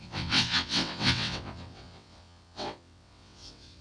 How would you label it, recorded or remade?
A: remade